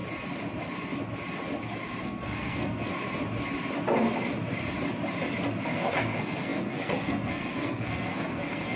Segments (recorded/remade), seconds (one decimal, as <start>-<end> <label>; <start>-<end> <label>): 0.0-2.0 recorded; 2.0-2.9 remade; 2.9-5.6 recorded; 5.6-8.8 remade